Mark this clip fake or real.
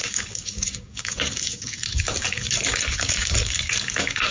fake